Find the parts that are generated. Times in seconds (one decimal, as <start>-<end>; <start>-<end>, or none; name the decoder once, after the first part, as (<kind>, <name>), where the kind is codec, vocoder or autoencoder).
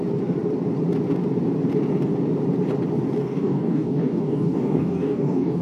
3.2-5.6 (codec, DAC)